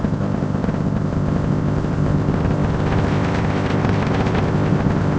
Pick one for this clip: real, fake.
fake